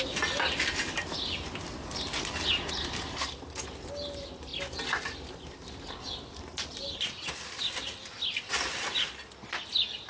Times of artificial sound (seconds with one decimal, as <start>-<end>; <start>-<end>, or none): none